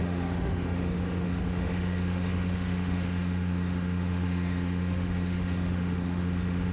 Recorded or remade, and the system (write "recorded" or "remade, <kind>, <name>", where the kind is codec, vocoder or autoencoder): remade, autoencoder, DAC-VAE